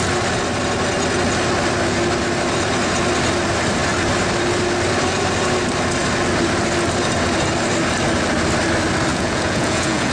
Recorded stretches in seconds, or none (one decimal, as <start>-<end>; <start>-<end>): 0.0-9.1